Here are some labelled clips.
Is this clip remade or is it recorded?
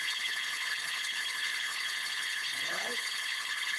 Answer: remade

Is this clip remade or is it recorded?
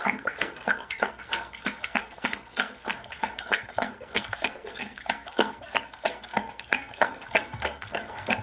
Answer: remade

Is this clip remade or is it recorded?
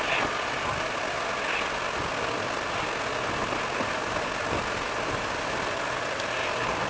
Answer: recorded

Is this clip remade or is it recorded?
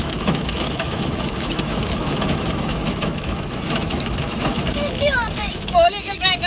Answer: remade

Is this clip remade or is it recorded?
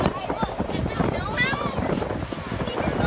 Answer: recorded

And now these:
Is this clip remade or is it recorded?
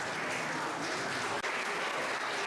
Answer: recorded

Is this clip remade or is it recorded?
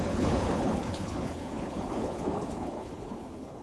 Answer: remade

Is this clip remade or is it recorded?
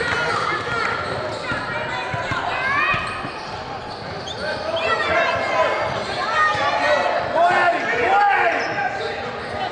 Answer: recorded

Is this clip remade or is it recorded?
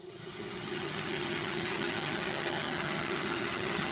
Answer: remade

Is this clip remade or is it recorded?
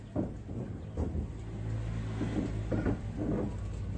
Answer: recorded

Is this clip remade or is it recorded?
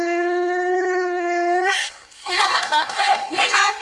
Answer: remade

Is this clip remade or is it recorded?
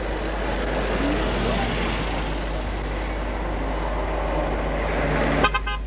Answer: recorded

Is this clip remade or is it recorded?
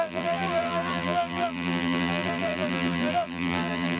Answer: remade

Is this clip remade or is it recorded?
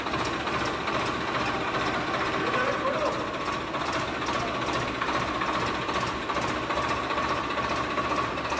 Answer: recorded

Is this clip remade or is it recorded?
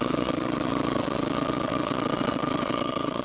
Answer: remade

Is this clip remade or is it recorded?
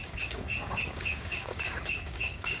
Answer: remade